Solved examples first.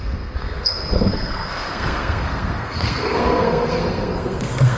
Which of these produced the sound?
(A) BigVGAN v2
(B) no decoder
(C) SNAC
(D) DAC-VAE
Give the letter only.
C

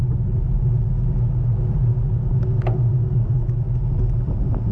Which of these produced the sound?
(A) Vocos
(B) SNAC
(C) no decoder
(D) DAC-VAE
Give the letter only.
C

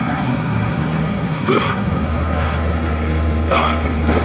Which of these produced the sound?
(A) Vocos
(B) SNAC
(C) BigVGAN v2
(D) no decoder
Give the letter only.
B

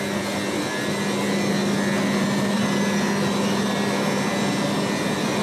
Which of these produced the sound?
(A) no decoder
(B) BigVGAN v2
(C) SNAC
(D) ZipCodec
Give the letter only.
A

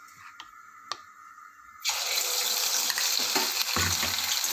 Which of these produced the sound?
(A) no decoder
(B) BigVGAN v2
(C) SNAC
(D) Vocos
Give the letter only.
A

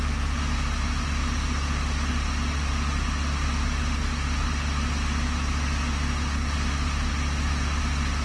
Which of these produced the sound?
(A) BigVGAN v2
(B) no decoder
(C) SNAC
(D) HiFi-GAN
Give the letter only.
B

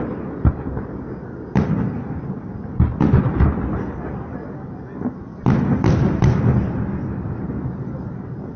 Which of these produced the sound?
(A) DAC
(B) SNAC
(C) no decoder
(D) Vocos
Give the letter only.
C